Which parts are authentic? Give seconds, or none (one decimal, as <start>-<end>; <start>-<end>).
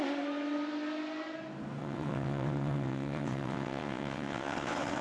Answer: 0.0-1.8